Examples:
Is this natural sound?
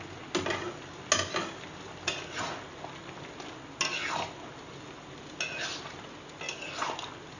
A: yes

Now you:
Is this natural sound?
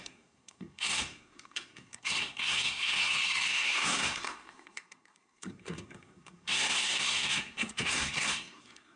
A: no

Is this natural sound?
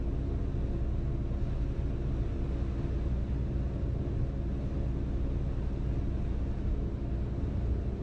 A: yes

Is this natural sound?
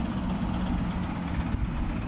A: yes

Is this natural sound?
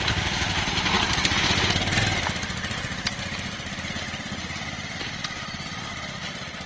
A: yes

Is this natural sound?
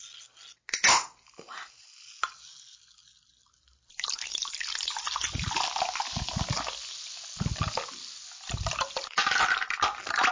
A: yes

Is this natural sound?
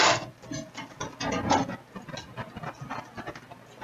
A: yes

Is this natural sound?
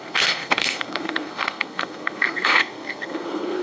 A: no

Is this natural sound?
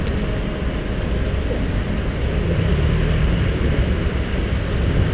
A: yes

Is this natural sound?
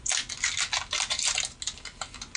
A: yes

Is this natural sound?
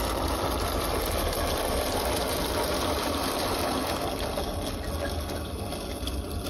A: yes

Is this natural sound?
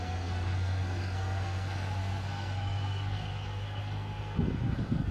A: no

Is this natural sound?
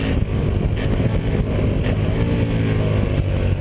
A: yes